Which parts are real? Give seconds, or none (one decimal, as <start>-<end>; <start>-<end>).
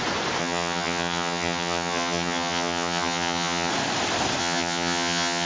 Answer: 0.0-0.4; 3.7-4.4